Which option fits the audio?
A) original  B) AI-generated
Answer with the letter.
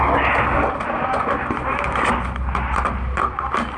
A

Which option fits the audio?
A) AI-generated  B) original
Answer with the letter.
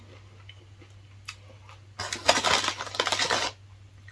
B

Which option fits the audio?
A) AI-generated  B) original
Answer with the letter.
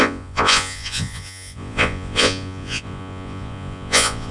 A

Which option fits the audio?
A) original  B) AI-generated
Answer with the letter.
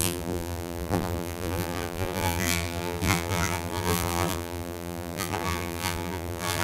B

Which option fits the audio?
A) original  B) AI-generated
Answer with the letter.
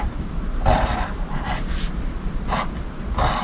A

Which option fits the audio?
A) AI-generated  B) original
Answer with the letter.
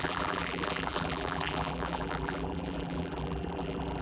A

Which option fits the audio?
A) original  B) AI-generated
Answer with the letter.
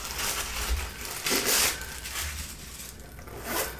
A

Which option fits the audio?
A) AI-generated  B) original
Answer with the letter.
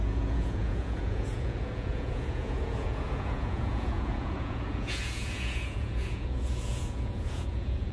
A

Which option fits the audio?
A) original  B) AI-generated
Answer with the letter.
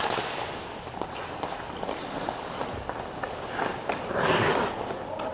A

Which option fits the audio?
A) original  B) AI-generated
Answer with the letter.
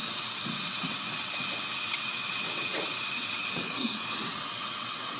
B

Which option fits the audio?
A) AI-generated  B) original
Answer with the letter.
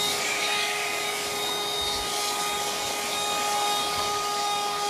A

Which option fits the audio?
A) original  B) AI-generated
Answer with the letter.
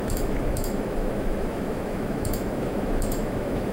B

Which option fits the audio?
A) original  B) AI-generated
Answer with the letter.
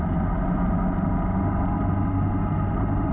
A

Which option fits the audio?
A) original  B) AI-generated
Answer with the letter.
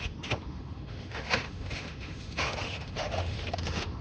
B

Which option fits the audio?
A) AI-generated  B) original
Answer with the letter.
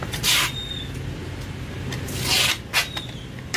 B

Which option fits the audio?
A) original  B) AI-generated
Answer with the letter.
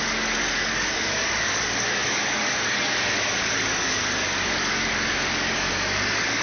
B